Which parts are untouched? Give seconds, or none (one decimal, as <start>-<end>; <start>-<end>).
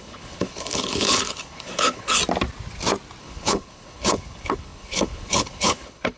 2.2-3.2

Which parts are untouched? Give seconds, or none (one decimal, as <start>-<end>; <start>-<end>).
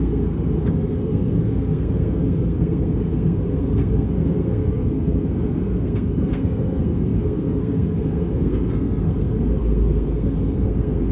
none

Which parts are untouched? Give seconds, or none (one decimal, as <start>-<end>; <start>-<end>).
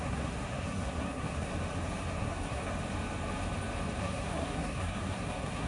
1.5-2.2; 2.7-4.0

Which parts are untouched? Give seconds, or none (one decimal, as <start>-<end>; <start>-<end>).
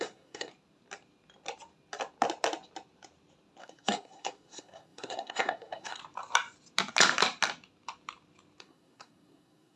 0.5-3.6; 6.0-8.6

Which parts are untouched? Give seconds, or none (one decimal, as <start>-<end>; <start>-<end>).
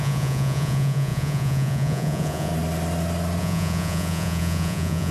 2.5-3.4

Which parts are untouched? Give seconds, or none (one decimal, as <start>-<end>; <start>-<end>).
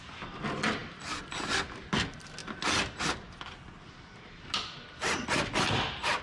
0.0-6.2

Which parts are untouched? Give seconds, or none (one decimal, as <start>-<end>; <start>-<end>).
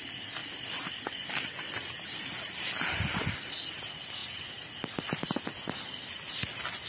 0.0-6.9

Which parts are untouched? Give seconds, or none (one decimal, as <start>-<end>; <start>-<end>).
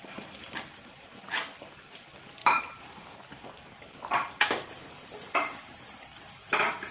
0.0-2.4; 5.8-6.9